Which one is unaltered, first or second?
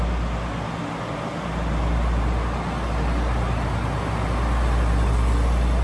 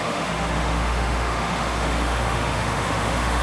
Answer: first